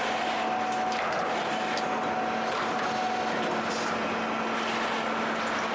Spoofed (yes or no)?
no